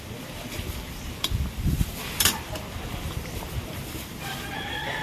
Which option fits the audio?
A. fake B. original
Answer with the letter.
A